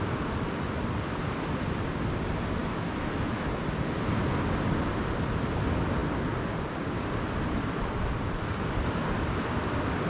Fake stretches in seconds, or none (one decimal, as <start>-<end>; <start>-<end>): 2.6-3.5